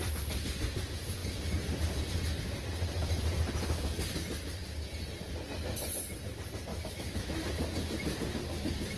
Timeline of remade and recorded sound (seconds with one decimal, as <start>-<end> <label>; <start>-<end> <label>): 0.0-6.7 recorded; 6.7-7.3 remade; 7.3-9.0 recorded